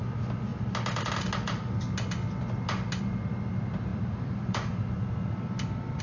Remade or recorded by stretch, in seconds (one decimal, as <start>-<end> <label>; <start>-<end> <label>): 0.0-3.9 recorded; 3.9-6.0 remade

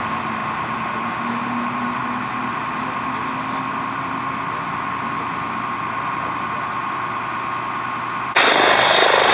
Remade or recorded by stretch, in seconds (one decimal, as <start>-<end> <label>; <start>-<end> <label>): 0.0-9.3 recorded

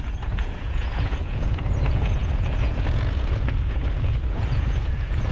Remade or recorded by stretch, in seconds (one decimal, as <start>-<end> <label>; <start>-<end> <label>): 0.0-5.3 remade

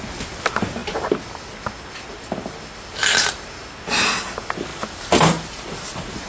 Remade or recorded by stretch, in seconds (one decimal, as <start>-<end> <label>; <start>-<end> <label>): 0.0-4.7 recorded; 4.7-6.3 remade